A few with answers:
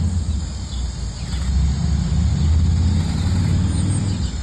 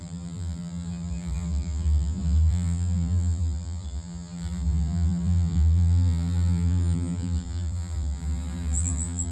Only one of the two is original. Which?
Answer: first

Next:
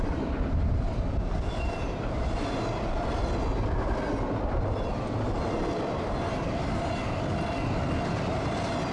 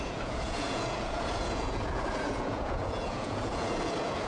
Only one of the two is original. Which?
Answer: first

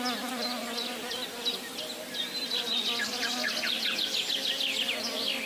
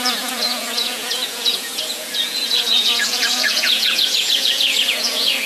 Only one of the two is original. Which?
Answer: first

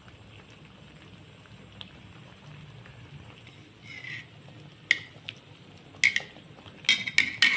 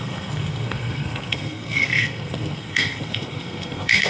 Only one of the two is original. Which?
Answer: first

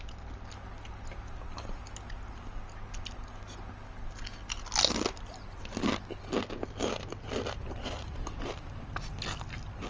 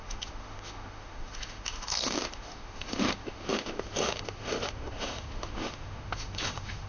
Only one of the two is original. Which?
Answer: first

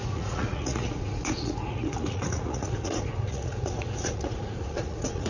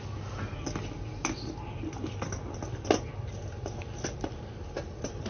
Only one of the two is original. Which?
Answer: second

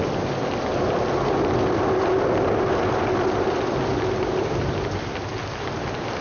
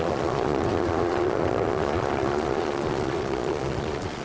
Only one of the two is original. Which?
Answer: first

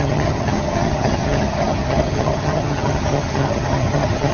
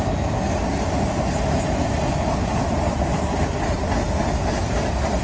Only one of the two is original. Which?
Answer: second